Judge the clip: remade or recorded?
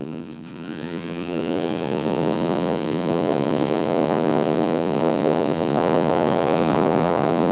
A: remade